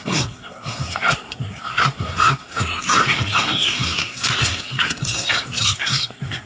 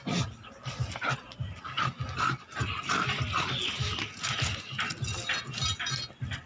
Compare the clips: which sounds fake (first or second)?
first